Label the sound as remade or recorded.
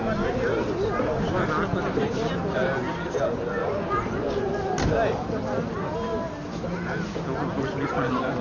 recorded